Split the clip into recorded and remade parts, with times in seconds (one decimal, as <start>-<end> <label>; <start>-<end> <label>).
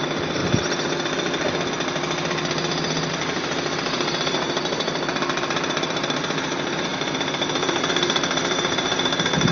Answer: 0.0-0.4 remade; 0.4-3.1 recorded; 3.1-9.5 remade